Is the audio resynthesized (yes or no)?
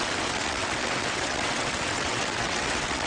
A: yes